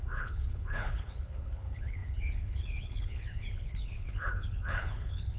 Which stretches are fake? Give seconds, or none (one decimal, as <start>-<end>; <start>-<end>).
0.0-5.4